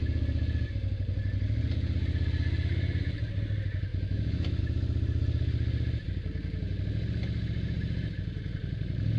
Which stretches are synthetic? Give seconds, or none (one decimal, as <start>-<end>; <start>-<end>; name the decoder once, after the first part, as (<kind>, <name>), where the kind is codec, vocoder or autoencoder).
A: 3.9-4.6 (autoencoder, DAC-VAE)